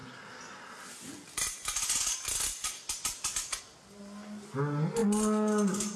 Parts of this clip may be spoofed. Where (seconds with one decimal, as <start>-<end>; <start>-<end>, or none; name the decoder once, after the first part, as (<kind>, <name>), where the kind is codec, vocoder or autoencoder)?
none